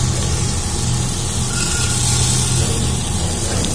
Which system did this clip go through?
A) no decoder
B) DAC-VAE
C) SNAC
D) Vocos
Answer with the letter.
A